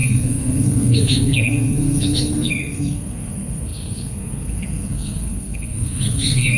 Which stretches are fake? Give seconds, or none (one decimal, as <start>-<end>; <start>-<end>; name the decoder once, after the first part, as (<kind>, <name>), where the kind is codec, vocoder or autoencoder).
0.0-6.6 (codec, SNAC)

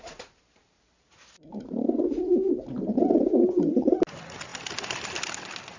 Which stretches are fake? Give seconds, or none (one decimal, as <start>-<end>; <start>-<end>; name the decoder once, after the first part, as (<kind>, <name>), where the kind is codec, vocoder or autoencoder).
none

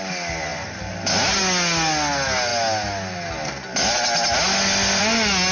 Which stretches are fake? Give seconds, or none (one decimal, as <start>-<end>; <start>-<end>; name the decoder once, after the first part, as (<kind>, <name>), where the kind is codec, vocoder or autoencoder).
none

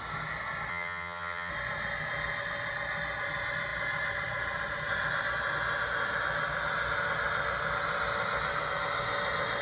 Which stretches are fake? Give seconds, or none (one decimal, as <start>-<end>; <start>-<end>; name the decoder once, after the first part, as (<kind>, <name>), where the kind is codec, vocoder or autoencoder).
0.7-1.5 (vocoder, HiFi-GAN)